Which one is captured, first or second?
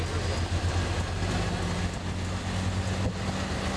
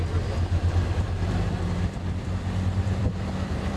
first